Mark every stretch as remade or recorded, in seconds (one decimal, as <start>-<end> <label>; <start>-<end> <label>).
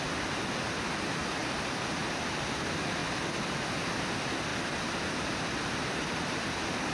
0.0-6.9 recorded